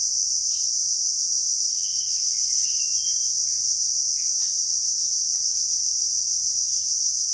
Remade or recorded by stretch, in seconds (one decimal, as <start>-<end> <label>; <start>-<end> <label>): 0.0-1.7 recorded; 1.7-2.8 remade; 2.8-7.3 recorded